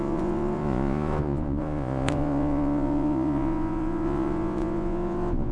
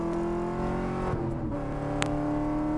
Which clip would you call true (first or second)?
second